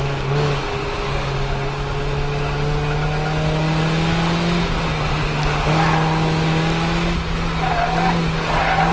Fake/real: real